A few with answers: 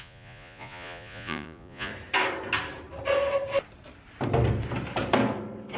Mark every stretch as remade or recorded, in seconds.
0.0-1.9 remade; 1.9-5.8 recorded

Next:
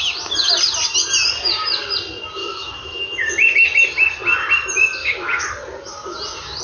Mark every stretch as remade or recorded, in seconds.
0.0-2.4 recorded; 2.4-3.3 remade; 3.3-5.0 recorded; 5.0-5.5 remade; 5.5-6.6 recorded

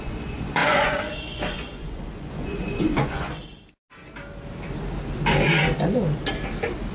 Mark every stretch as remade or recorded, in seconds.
0.0-3.4 remade; 3.4-6.9 recorded

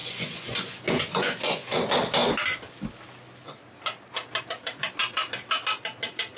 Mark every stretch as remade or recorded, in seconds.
0.0-1.8 remade; 1.8-6.4 recorded

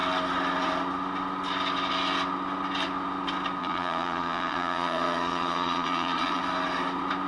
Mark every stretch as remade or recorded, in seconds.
0.0-3.6 recorded; 3.6-6.4 remade; 6.4-7.3 recorded